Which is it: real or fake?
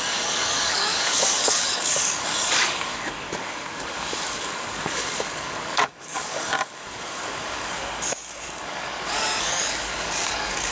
fake